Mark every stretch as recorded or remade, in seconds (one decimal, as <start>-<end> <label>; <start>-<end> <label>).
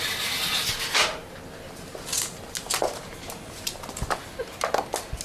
0.0-5.2 recorded